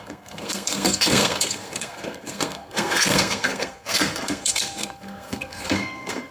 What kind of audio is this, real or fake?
fake